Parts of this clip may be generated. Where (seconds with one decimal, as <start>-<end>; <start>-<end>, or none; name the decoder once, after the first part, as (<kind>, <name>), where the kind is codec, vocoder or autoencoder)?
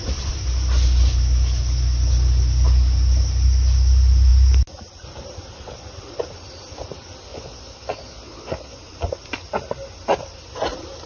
7.3-8.8 (vocoder, Vocos)